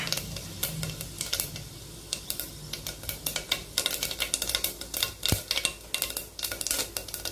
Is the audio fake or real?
real